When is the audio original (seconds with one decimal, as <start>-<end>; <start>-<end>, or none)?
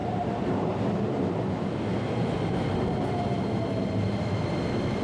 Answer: 0.9-5.0